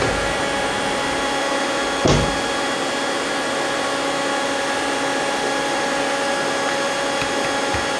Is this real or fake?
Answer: real